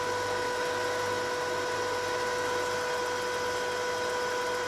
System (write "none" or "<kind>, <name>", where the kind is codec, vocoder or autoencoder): none